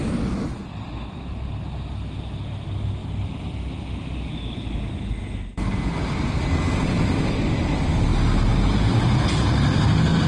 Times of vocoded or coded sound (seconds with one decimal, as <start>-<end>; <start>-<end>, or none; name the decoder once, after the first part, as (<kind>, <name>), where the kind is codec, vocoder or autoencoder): none